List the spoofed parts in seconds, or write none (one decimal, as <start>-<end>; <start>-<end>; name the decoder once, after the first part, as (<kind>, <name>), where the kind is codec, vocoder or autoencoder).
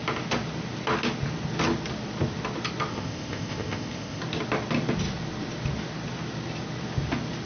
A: 2.9-4.2 (codec, ZipCodec)